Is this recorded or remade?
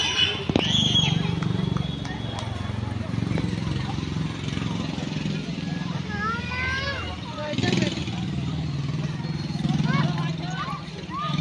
recorded